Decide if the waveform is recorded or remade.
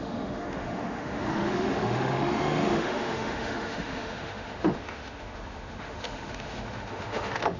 remade